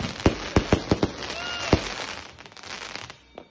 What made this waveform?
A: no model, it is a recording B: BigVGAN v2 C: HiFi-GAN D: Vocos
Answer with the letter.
A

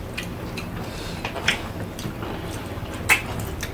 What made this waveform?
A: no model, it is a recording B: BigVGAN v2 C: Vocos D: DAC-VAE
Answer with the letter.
A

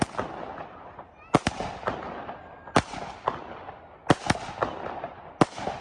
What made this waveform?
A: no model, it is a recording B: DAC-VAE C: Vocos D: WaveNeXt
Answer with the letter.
A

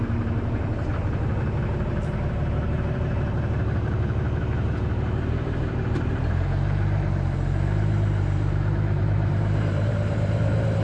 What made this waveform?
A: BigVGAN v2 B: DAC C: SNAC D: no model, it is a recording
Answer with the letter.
A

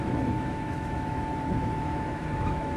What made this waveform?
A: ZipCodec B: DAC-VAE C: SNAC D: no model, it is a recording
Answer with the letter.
B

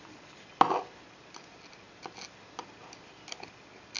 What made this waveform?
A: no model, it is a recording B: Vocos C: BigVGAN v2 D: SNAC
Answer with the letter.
A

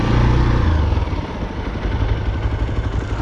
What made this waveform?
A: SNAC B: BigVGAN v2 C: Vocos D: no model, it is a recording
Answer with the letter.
D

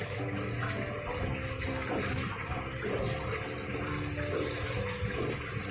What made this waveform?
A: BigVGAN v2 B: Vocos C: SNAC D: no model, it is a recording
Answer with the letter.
D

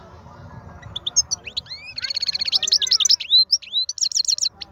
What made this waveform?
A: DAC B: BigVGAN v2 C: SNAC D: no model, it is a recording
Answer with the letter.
D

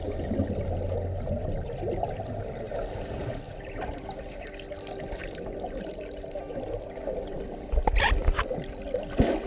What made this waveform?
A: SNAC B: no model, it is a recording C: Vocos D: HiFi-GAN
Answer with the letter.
B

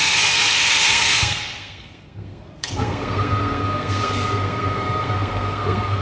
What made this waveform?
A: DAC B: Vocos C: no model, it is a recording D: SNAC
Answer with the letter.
D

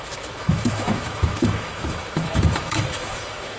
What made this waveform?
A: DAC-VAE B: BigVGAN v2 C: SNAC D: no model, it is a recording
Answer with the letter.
A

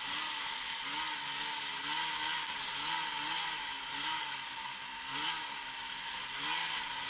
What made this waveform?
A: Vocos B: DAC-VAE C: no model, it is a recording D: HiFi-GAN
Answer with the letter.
C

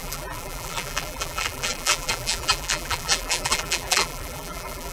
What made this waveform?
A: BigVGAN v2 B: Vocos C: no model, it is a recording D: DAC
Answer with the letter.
A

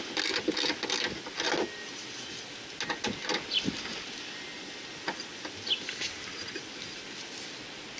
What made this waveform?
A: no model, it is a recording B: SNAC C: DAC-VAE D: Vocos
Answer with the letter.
A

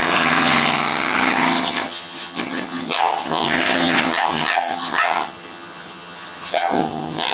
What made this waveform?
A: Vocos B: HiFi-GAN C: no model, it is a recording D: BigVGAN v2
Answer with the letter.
B